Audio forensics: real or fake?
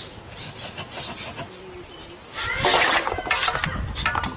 real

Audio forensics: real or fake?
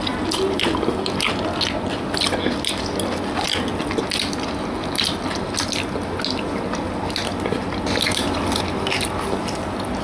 real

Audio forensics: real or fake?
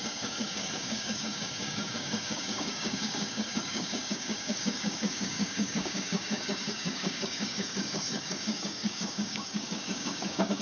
fake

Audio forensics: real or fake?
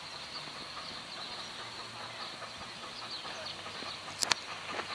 real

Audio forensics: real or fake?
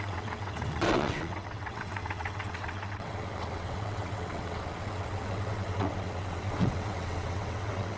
fake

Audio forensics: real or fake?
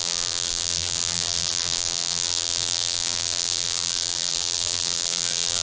fake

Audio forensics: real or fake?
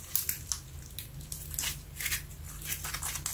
real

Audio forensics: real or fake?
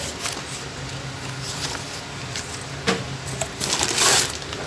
real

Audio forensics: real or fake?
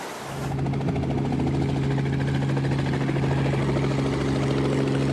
real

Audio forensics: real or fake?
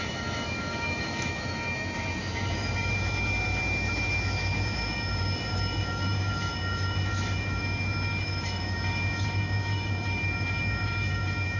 fake